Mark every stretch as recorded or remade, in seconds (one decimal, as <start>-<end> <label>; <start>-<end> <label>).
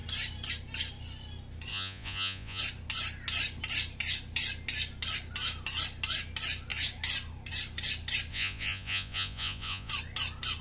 0.0-1.7 recorded; 1.7-2.6 remade; 2.6-8.3 recorded; 8.3-9.9 remade; 9.9-10.6 recorded